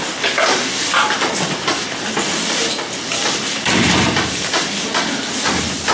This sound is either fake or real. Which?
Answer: real